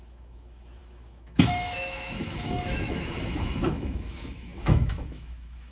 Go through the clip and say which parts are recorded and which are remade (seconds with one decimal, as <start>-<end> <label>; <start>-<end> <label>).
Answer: 0.0-5.7 remade